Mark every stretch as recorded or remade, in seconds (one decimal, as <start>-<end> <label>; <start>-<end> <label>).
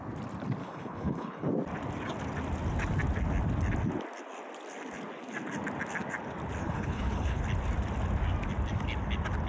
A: 0.0-0.6 recorded; 0.6-1.5 remade; 1.5-6.6 recorded; 6.6-7.4 remade; 7.4-9.5 recorded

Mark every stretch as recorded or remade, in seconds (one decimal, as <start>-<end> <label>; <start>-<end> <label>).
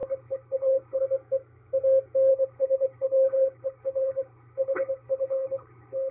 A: 0.0-1.0 remade; 1.0-2.3 recorded; 2.3-6.1 remade